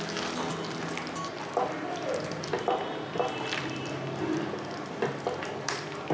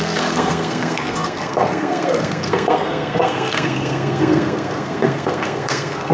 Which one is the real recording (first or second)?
first